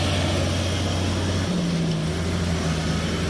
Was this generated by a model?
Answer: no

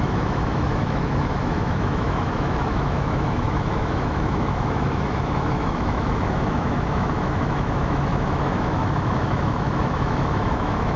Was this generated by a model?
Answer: yes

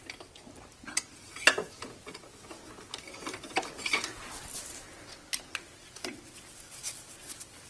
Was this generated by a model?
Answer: no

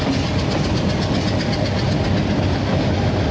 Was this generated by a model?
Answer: no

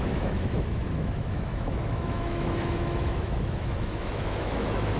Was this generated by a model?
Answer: yes